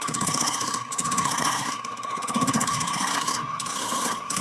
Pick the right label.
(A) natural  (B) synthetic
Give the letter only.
B